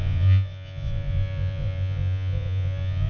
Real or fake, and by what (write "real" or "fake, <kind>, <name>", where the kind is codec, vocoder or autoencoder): fake, vocoder, Vocos